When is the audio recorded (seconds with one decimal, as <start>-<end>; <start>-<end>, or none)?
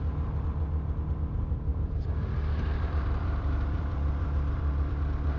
0.0-1.7; 4.9-5.4